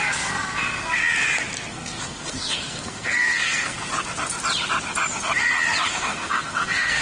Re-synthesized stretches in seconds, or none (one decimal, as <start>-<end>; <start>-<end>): 0.0-1.0; 1.7-3.9; 5.9-7.0